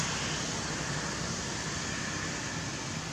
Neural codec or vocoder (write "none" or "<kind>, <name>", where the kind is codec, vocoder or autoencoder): none